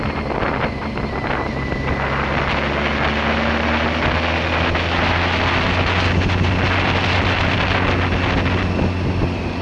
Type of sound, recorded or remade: recorded